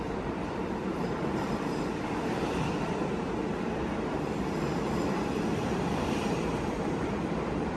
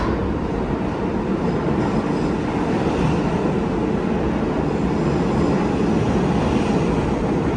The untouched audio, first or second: second